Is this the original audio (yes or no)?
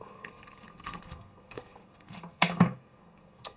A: no